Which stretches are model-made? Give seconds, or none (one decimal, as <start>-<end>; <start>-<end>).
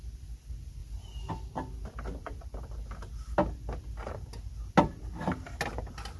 none